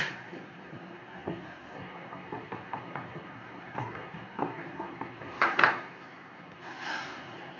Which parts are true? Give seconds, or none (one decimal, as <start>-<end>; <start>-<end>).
none